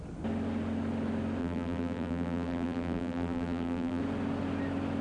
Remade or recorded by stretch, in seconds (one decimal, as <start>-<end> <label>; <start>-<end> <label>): 0.0-1.4 recorded; 1.4-4.0 remade; 4.0-5.0 recorded